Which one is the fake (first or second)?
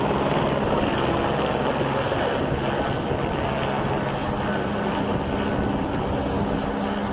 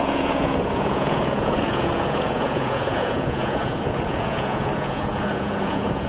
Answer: second